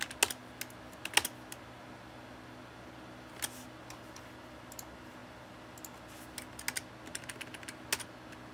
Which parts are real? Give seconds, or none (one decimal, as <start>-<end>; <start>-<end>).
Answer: 0.0-8.5